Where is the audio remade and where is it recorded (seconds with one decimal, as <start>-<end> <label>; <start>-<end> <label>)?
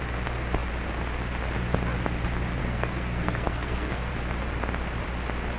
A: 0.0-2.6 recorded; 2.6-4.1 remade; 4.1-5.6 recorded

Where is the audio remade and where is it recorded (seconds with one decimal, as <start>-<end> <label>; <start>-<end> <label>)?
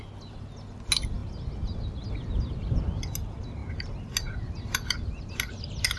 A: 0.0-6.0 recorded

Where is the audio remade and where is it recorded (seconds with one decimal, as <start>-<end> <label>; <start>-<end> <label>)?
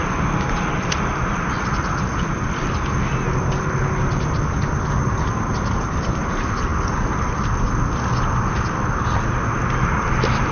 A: 0.0-10.5 recorded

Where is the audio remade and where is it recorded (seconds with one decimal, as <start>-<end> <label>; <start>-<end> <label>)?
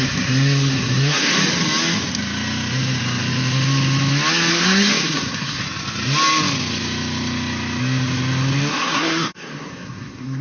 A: 0.0-1.4 remade; 1.4-4.5 recorded; 4.5-5.6 remade; 5.6-8.7 recorded; 8.7-10.4 remade